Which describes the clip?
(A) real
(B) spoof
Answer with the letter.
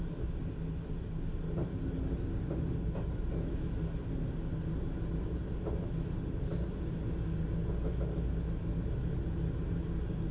A